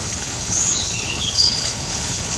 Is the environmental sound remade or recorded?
remade